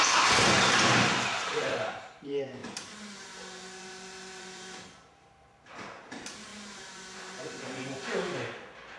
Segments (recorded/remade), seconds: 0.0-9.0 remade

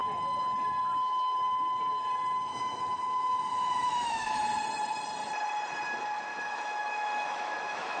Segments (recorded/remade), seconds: 0.0-2.5 recorded; 2.5-4.4 remade; 4.4-6.3 recorded; 6.3-8.0 remade

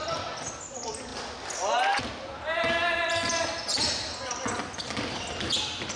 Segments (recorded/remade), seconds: 0.0-6.0 recorded